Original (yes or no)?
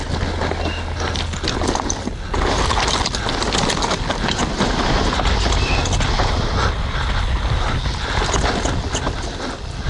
yes